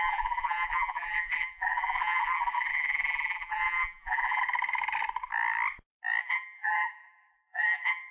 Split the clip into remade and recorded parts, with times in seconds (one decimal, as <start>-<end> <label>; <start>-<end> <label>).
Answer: 0.0-4.4 remade; 4.4-6.2 recorded; 6.2-8.1 remade